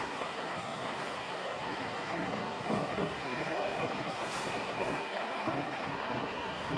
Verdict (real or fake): fake